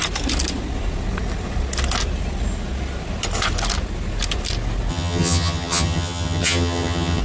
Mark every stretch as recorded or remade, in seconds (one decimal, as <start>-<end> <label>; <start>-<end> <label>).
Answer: 0.0-4.9 recorded; 4.9-7.2 remade